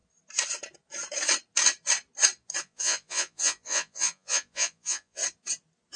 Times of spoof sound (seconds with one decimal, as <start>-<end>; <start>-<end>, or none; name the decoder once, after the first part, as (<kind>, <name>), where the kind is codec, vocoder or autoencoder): 2.6-5.2 (vocoder, Vocos)